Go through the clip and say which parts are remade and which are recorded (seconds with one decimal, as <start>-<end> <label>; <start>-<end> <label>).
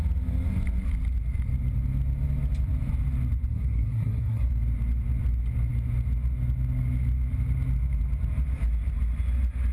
0.0-3.5 recorded; 3.5-4.5 remade; 4.5-9.7 recorded